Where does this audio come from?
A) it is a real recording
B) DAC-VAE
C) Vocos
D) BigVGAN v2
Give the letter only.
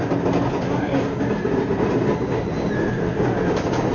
A